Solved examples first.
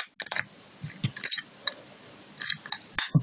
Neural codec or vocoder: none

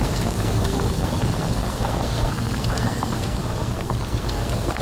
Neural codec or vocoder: codec, SNAC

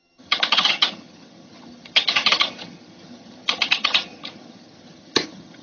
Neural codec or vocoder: vocoder, HiFi-GAN